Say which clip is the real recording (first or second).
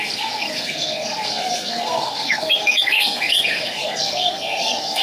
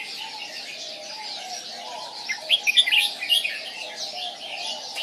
second